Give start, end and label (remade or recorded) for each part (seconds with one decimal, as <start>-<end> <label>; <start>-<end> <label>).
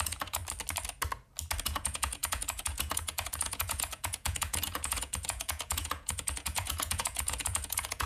0.0-0.4 remade; 0.4-1.6 recorded; 1.6-8.1 remade